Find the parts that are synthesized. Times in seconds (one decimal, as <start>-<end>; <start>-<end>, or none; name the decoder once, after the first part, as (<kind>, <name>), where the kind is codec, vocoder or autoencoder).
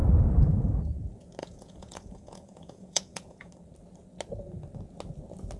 1.4-3.5 (vocoder, Vocos)